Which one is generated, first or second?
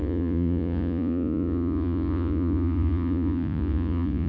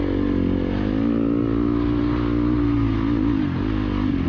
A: first